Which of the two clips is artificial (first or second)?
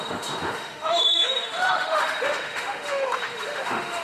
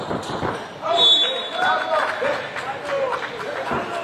first